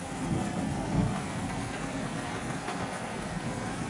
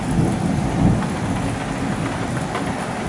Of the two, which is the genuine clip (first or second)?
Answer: second